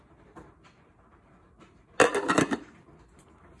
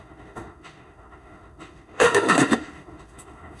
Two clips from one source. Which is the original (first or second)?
first